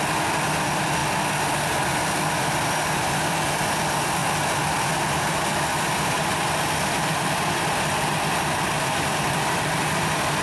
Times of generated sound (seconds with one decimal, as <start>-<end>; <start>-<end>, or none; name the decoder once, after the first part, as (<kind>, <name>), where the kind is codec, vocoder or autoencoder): 0.0-1.0 (vocoder, BigVGAN v2); 2.4-4.2; 7.6-10.4